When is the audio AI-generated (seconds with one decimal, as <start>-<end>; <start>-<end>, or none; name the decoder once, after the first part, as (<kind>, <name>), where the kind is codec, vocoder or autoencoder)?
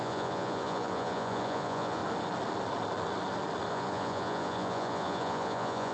0.0-2.0 (vocoder, Vocos); 3.7-5.9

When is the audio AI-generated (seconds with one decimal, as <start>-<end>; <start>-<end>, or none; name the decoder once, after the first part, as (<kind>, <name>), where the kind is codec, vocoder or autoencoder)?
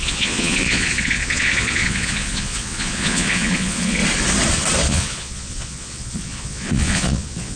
0.0-4.0 (vocoder, Vocos); 4.9-7.6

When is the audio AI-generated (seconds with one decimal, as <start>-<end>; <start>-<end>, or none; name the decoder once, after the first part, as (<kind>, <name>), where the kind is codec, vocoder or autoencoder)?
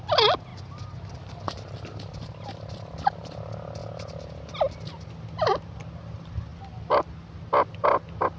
none